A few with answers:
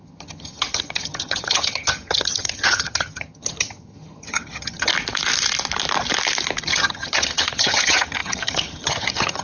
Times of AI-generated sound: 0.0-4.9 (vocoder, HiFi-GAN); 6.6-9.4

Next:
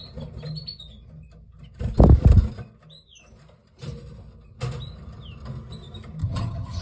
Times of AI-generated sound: 6.2-6.8 (vocoder, HiFi-GAN)

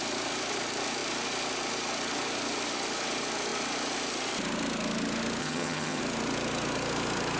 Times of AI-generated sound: 5.4-6.0 (vocoder, HiFi-GAN)

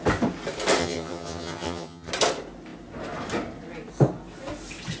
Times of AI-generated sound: 0.8-2.1 (vocoder, HiFi-GAN)

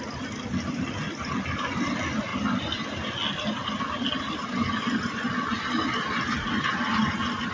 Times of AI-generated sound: none

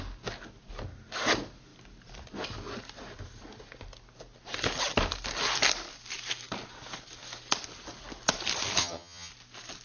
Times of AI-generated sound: 8.8-9.3 (vocoder, HiFi-GAN)

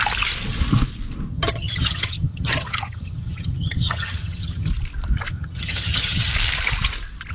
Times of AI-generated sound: 1.3-4.7 (vocoder, HiFi-GAN); 5.3-6.3

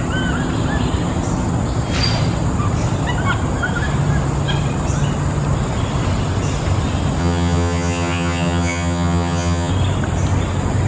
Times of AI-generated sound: 7.2-9.7 (vocoder, HiFi-GAN)